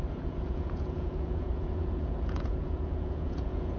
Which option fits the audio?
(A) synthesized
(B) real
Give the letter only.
A